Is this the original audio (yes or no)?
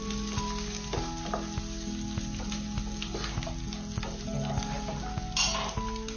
yes